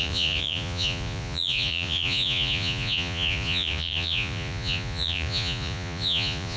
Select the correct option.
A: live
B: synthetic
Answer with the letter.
B